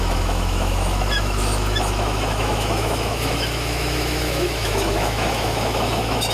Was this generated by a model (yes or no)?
yes